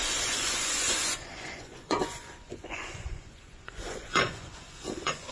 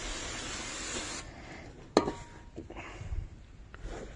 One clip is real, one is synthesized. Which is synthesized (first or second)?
first